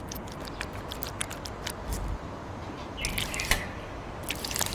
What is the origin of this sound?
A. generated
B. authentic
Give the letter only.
B